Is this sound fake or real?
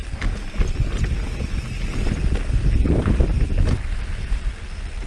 real